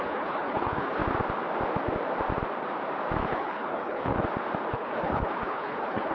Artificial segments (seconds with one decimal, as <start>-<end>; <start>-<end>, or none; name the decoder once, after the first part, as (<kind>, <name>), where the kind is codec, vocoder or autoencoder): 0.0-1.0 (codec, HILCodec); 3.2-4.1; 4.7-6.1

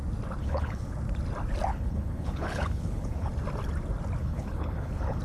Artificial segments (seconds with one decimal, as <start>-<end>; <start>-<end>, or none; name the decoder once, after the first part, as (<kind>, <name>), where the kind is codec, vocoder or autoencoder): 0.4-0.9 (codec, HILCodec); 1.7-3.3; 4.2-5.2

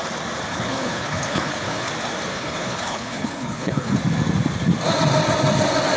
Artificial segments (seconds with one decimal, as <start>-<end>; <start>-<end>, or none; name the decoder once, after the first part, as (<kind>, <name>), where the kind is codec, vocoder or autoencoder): 0.5-1.9 (codec, HILCodec); 2.3-4.0